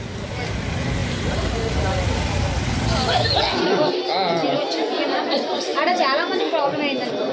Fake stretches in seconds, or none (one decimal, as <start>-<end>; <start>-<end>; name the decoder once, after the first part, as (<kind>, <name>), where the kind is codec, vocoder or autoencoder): none